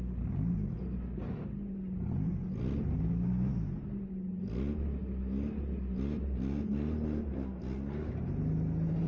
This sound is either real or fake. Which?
real